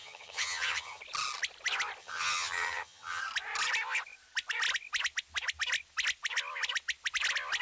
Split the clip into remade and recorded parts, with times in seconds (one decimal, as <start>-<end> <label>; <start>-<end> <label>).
0.0-1.0 remade; 1.0-2.0 recorded; 2.0-3.2 remade; 3.2-7.6 recorded